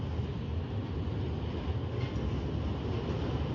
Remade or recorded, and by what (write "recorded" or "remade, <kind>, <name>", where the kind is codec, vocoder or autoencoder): recorded